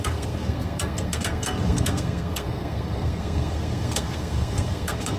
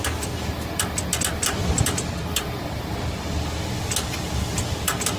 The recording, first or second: second